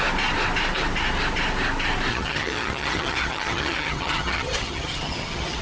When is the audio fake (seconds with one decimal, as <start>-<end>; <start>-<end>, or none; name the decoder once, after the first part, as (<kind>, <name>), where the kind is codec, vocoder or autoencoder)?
2.1-5.6 (vocoder, HiFi-GAN)